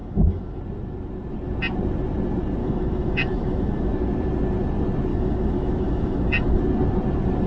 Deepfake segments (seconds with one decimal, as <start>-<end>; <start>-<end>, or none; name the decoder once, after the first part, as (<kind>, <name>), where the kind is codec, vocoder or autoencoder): 0.0-0.6 (autoencoder, DAC-VAE); 2.6-3.9; 5.1-6.6